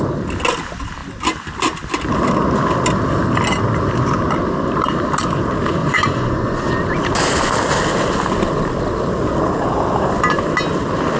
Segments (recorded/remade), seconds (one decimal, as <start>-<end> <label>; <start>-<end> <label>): 0.0-5.8 recorded; 5.8-6.7 remade; 6.7-11.2 recorded